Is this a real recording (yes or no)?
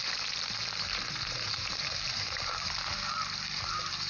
no